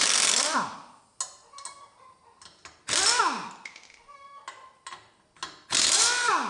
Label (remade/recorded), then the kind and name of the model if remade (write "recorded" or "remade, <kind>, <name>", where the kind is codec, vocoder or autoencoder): recorded